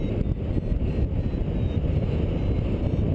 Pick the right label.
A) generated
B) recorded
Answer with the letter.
B